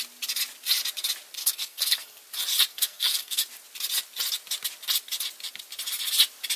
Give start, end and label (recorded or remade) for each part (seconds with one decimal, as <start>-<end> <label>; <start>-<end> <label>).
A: 0.0-1.4 recorded; 1.4-2.2 remade; 2.2-2.7 recorded; 2.7-3.4 remade; 3.4-6.6 recorded

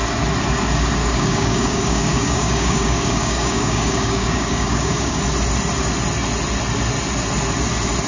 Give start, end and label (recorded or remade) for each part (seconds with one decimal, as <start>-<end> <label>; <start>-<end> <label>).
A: 0.0-1.0 recorded; 1.0-5.2 remade; 5.2-8.1 recorded

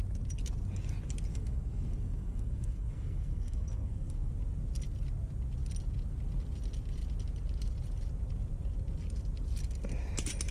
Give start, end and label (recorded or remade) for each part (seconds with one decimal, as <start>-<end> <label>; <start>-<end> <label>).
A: 0.0-1.3 recorded; 1.3-4.3 remade; 4.3-10.5 recorded

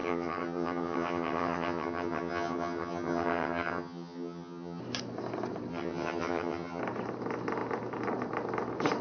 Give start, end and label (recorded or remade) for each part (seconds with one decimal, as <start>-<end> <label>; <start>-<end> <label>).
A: 0.0-4.8 remade; 4.8-5.7 recorded; 5.7-6.8 remade; 6.8-9.0 recorded

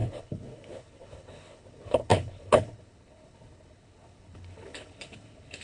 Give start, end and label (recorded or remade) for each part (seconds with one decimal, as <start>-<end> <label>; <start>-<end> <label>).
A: 0.0-5.6 remade

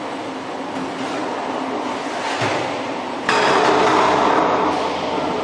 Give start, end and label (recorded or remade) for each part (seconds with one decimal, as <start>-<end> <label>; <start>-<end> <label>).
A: 0.0-5.4 recorded

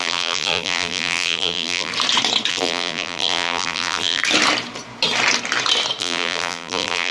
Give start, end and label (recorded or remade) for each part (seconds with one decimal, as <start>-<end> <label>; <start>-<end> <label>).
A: 0.0-1.9 remade; 1.9-2.5 recorded; 2.5-4.2 remade; 4.2-6.0 recorded; 6.0-7.1 remade

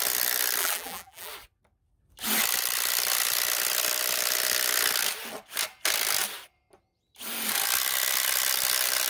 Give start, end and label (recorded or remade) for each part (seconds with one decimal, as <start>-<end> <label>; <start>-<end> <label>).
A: 0.0-0.6 recorded; 0.6-1.3 remade; 1.3-9.1 recorded